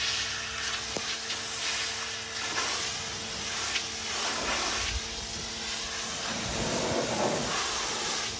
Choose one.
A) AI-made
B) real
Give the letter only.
B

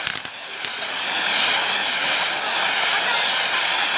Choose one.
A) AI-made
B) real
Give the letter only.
B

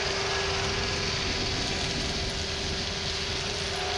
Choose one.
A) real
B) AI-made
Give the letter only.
A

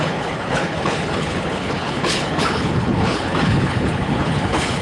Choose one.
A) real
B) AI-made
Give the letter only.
B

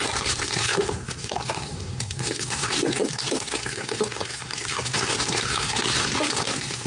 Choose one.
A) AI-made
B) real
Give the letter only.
A